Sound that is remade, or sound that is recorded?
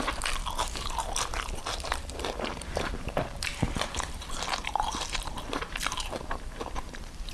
remade